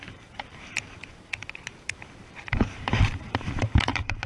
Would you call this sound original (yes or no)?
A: no